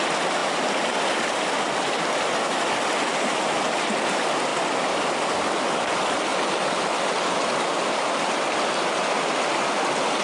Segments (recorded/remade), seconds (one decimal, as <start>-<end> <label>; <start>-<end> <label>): 0.0-4.5 recorded; 4.5-5.1 remade; 5.1-10.2 recorded